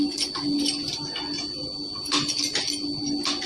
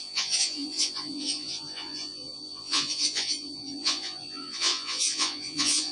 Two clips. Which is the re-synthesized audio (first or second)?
second